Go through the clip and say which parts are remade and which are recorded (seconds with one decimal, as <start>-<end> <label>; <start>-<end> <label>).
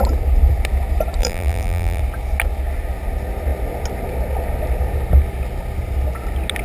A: 0.0-1.2 recorded; 1.2-2.0 remade; 2.0-6.6 recorded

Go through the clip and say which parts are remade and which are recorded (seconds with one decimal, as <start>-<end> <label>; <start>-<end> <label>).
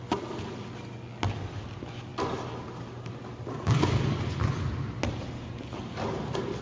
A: 0.0-6.6 recorded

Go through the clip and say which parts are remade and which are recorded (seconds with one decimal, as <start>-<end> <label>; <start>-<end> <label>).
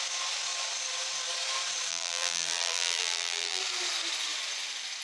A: 0.0-1.9 recorded; 1.9-3.6 remade; 3.6-5.0 recorded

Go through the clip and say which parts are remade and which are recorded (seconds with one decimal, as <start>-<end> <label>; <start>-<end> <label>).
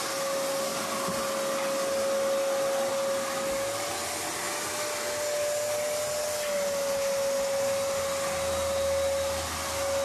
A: 0.0-10.0 recorded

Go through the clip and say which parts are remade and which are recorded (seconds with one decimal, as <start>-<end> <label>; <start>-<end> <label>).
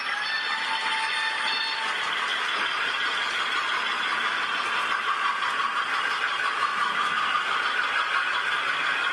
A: 0.0-2.3 recorded; 2.3-4.9 remade; 4.9-9.1 recorded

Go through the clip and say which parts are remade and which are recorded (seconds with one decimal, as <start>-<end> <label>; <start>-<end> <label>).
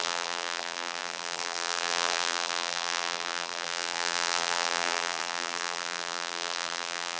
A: 0.0-7.2 remade